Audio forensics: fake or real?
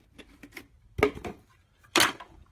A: fake